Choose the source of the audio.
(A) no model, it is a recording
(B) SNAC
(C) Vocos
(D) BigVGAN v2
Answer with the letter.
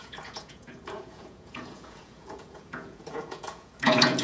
C